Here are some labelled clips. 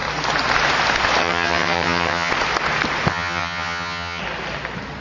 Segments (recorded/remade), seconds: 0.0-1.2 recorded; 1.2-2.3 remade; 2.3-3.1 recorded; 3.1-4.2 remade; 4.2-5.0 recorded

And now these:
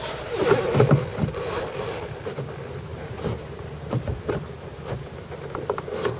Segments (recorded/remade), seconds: 0.0-1.1 recorded; 1.1-1.6 remade; 1.6-2.9 recorded; 2.9-4.3 remade; 4.3-6.2 recorded

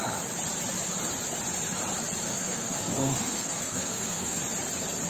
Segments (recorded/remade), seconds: 0.0-2.3 recorded; 2.3-4.4 remade; 4.4-5.1 recorded